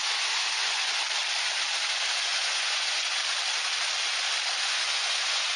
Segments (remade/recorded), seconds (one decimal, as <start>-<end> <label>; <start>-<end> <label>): 0.0-0.8 remade; 0.8-2.2 recorded; 2.2-3.2 remade; 3.2-4.6 recorded; 4.6-5.6 remade